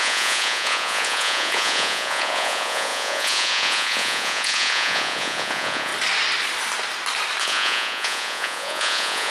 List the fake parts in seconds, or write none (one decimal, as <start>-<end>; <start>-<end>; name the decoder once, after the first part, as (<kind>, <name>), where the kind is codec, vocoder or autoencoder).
0.0-5.9 (vocoder, Vocos); 7.4-9.3